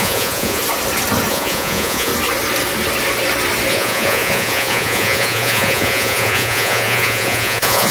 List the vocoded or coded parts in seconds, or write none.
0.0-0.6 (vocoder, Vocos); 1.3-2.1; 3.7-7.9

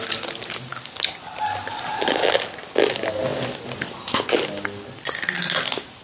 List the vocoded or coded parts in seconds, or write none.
none

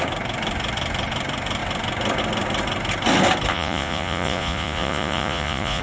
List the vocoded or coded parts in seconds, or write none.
3.5-5.8 (vocoder, Vocos)